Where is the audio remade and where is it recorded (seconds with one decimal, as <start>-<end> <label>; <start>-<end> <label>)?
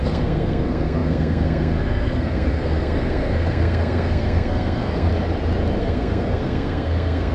0.0-5.1 remade; 5.1-5.8 recorded; 5.8-7.3 remade